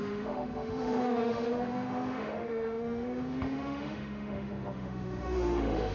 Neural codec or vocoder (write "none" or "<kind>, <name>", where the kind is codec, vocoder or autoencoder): autoencoder, DAC-VAE